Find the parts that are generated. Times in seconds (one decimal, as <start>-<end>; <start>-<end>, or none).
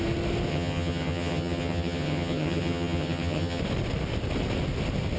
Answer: 0.5-3.6